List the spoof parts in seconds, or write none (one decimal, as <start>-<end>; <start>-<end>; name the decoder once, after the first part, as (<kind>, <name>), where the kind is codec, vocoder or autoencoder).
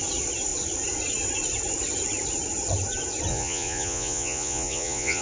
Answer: 3.3-5.2 (vocoder, Vocos)